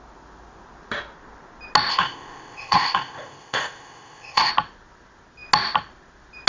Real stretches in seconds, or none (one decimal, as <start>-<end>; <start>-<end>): 0.0-1.9; 4.5-6.5